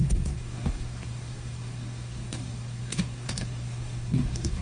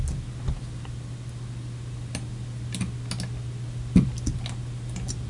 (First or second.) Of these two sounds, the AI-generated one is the first